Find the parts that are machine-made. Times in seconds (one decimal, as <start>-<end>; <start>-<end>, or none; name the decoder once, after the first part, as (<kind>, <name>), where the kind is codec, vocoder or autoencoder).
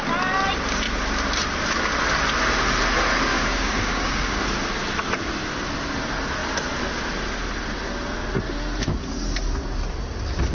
3.3-4.4 (codec, DAC)